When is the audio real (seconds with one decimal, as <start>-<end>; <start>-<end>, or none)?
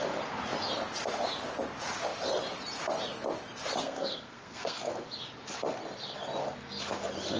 0.0-3.8; 4.9-7.4